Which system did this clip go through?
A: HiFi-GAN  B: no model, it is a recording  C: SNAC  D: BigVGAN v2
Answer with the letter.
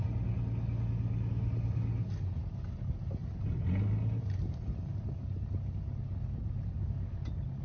B